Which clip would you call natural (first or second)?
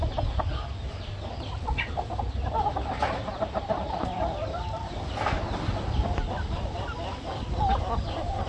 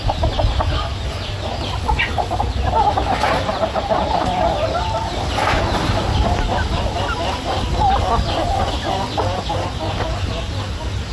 second